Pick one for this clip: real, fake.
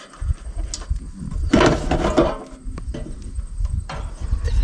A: real